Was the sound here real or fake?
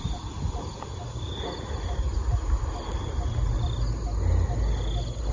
real